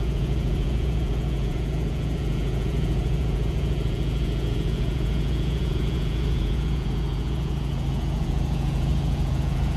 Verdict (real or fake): fake